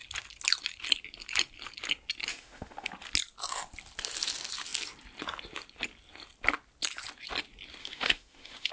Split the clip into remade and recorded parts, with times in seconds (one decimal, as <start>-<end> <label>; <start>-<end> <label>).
0.0-2.3 recorded; 2.3-2.9 remade; 2.9-7.8 recorded; 7.8-8.7 remade